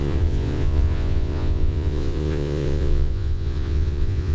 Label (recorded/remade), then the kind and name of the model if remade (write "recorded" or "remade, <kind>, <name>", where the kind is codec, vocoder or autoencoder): remade, vocoder, Vocos